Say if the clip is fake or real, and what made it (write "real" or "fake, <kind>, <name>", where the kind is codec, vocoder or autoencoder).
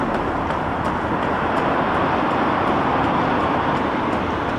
real